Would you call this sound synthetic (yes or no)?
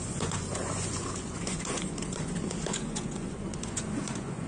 yes